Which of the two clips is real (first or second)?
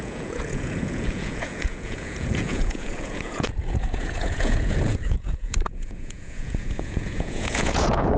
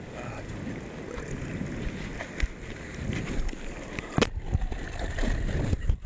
second